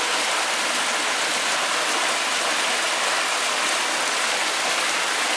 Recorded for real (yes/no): yes